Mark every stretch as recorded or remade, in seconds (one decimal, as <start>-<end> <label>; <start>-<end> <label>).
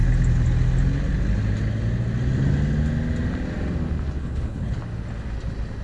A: 0.0-4.2 recorded; 4.2-4.8 remade; 4.8-5.8 recorded